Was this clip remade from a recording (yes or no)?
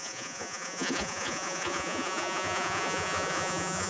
yes